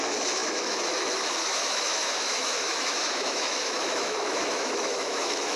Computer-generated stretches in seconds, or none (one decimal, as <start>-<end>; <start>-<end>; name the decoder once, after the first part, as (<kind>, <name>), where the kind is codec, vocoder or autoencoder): 0.0-5.6 (autoencoder, DAC-VAE)